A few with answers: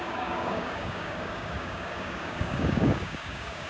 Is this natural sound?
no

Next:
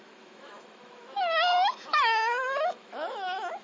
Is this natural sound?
no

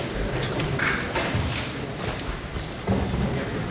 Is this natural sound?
yes